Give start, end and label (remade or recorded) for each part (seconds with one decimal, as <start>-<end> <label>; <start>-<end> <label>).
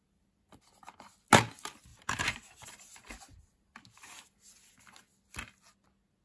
0.0-1.9 recorded; 1.9-3.1 remade; 3.1-6.2 recorded